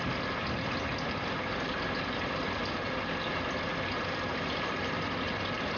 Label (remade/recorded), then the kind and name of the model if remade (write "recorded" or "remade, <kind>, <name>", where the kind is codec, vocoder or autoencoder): recorded